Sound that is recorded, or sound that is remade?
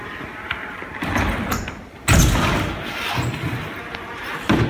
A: recorded